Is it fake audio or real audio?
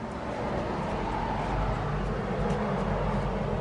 real